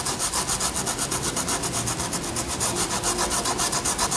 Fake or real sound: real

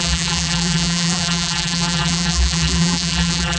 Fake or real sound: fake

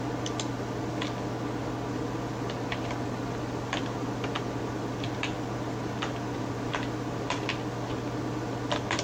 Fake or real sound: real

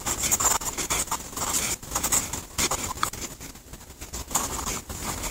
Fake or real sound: real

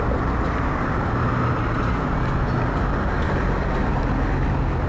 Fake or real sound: real